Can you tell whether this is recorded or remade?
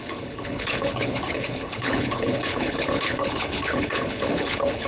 remade